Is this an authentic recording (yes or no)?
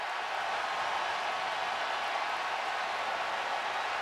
yes